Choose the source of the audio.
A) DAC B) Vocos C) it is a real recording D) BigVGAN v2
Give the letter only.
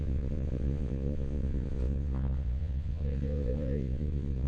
B